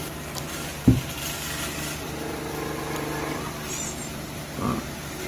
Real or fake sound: fake